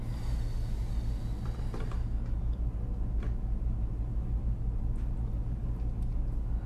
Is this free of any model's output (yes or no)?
yes